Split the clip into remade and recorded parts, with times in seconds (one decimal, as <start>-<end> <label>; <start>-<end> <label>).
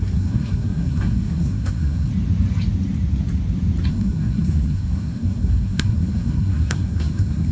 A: 0.0-2.1 remade; 2.1-3.9 recorded; 3.9-7.5 remade